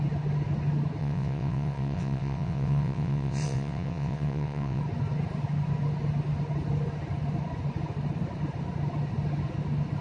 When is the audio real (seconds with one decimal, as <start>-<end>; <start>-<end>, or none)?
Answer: 0.0-1.0; 4.8-10.0